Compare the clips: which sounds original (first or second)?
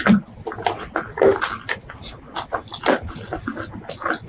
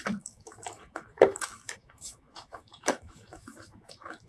first